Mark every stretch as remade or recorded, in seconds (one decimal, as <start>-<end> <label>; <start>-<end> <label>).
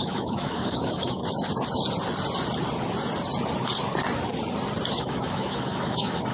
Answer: 0.0-1.2 remade; 1.2-5.0 recorded; 5.0-6.3 remade